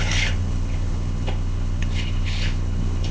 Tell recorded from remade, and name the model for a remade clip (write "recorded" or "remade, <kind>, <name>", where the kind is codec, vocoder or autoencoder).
remade, codec, HILCodec